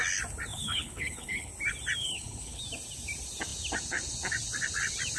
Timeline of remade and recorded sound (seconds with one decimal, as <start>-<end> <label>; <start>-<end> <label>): 0.0-0.5 recorded; 0.5-1.5 remade; 1.5-2.0 recorded; 2.0-2.6 remade; 2.6-5.2 recorded